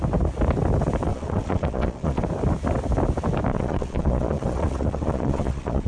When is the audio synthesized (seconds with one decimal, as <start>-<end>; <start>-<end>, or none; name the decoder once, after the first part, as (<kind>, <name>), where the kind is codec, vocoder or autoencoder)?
1.1-2.2 (vocoder, Vocos); 3.5-5.9